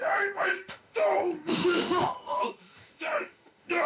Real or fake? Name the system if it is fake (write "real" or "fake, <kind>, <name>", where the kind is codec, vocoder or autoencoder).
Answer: fake, autoencoder, DAC-VAE